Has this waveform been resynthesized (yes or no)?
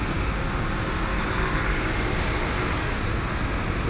no